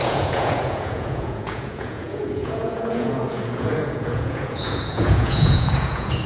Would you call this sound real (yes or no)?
no